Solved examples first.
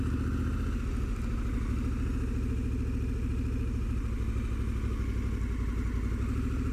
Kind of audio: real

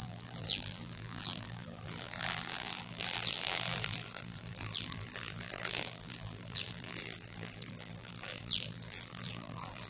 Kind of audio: fake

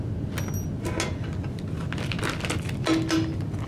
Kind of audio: real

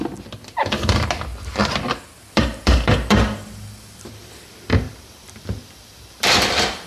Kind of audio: fake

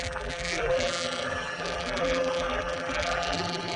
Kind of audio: fake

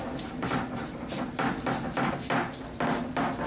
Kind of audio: real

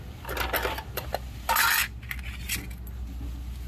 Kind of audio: real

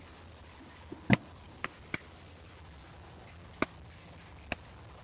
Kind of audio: real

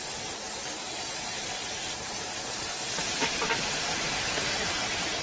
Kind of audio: fake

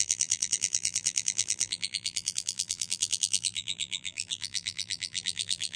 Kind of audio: fake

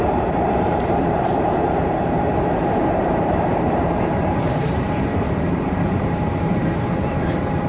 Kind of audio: fake